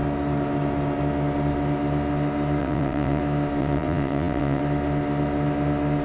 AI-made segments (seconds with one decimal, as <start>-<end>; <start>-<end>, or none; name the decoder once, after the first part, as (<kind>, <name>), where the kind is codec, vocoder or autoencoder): 2.6-3.2 (vocoder, WaveNeXt); 3.6-4.6